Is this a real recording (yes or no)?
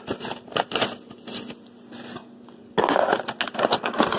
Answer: yes